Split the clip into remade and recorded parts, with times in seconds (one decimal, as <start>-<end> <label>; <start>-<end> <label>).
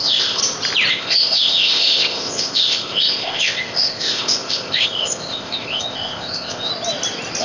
0.0-0.4 remade; 0.4-0.9 recorded; 0.9-6.7 remade; 6.7-7.4 recorded